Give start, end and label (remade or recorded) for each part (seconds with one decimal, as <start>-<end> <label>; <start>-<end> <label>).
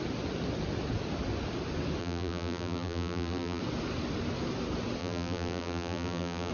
0.0-2.0 recorded; 2.0-3.6 remade; 3.6-5.0 recorded; 5.0-6.5 remade